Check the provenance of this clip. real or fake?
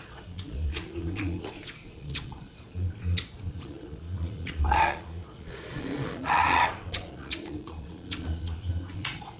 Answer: fake